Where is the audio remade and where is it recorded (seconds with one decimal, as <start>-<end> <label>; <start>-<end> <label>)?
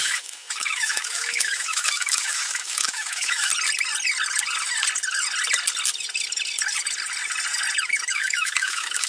0.0-3.5 remade; 3.5-8.1 recorded; 8.1-9.1 remade